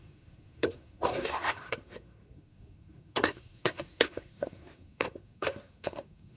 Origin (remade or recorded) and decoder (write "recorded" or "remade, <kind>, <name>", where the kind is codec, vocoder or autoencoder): remade, codec, SNAC